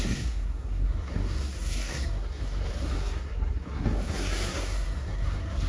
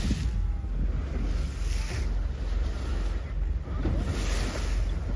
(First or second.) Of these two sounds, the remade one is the first